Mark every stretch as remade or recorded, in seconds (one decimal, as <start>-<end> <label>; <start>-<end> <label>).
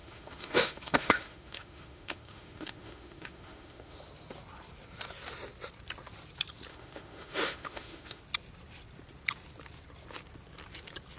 0.0-4.0 remade; 4.0-6.7 recorded; 6.7-8.2 remade; 8.2-11.2 recorded